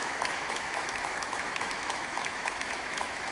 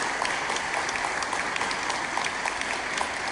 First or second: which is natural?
second